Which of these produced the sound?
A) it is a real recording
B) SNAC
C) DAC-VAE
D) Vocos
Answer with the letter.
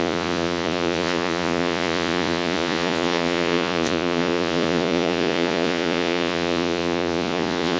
D